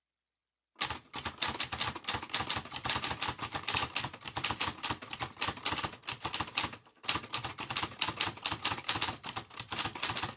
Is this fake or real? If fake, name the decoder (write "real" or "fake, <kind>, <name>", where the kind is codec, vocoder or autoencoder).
fake, vocoder, BigVGAN v2